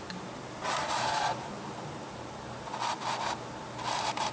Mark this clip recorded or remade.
recorded